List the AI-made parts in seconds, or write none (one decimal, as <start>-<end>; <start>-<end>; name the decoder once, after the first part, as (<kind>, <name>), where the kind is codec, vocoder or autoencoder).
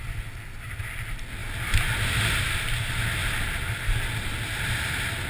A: none